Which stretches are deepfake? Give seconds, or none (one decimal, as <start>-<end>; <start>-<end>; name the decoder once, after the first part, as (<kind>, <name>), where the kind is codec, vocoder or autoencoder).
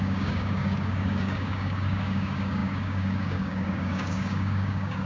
0.0-5.1 (codec, DAC)